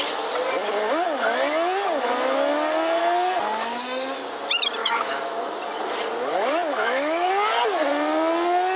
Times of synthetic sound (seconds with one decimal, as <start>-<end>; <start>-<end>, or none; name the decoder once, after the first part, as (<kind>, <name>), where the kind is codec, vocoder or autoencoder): 4.8-5.5 (autoencoder, DAC-VAE); 6.7-7.3

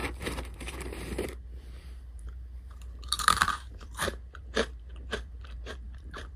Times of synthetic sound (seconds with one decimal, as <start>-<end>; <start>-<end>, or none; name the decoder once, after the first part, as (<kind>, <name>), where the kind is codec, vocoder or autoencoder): 0.0-6.4 (vocoder, BigVGAN v2)

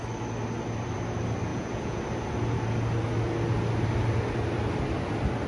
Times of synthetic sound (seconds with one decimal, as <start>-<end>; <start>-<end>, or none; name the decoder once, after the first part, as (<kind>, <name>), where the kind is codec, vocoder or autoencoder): 1.5-2.0 (vocoder, Vocos)

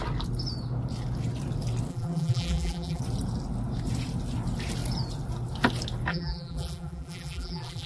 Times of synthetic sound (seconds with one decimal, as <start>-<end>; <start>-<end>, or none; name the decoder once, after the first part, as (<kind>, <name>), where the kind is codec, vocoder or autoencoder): 1.9-3.0 (vocoder, BigVGAN v2); 6.1-7.9

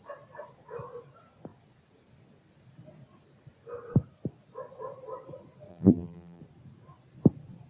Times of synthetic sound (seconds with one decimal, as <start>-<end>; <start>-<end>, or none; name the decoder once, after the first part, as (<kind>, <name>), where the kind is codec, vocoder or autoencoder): 5.7-6.4 (vocoder, BigVGAN v2)